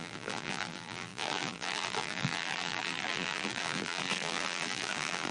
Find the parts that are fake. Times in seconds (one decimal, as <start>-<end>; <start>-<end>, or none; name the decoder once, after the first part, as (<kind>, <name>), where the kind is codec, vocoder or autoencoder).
0.0-5.3 (vocoder, BigVGAN v2)